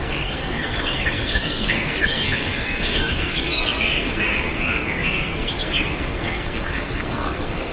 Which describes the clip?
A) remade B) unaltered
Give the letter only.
A